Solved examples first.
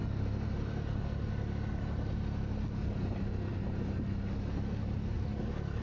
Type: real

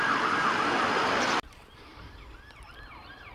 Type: real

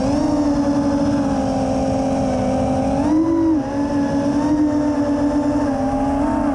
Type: real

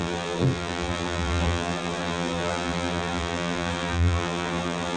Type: fake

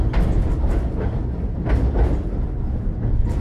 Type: real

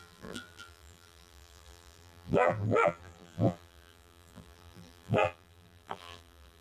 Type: fake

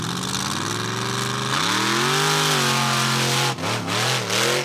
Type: real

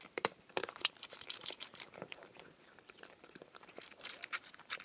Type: fake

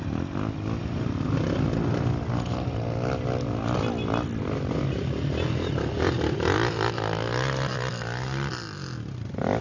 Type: real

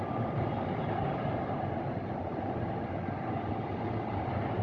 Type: fake